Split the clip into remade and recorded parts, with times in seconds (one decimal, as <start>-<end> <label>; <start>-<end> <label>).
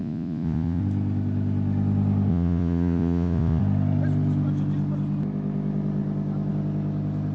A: 0.0-0.8 remade; 0.8-2.3 recorded; 2.3-3.6 remade; 3.6-7.3 recorded